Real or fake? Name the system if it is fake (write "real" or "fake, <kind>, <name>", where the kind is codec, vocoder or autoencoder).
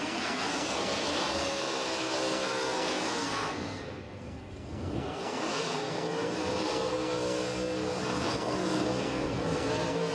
fake, codec, SNAC